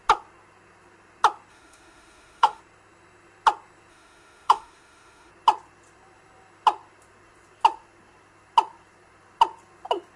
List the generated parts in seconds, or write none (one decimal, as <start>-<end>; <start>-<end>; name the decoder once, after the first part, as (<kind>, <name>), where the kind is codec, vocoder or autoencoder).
1.5-2.6 (autoencoder, DAC-VAE); 3.9-5.3